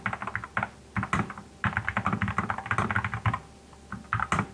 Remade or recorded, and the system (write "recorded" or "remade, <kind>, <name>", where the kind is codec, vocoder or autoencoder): recorded